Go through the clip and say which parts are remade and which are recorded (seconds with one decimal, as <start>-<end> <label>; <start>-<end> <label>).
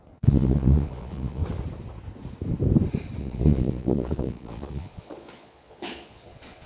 0.0-1.4 remade; 1.4-3.2 recorded; 3.2-6.7 remade